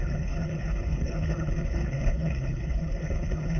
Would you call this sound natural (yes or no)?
no